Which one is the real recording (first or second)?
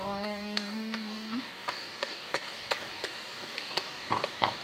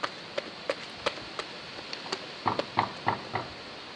second